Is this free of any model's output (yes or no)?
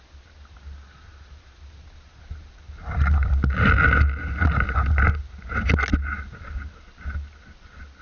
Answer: yes